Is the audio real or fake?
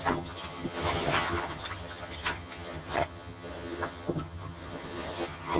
fake